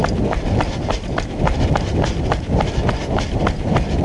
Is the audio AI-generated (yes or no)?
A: no